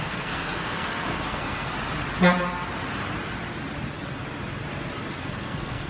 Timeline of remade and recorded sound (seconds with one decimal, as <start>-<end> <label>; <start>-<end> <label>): 0.0-1.7 remade; 1.7-5.2 recorded; 5.2-5.9 remade